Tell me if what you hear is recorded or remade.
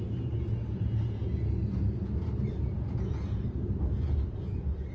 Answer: recorded